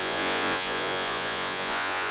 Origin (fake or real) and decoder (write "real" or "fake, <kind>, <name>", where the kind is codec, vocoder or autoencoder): fake, vocoder, Vocos